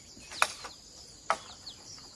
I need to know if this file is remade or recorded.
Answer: recorded